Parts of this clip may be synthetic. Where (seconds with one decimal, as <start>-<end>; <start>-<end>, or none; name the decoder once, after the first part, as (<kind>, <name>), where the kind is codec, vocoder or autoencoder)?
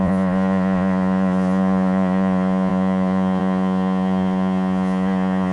0.0-5.5 (vocoder, Vocos)